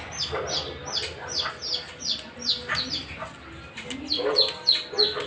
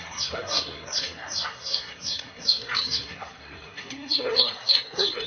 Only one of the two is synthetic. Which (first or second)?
second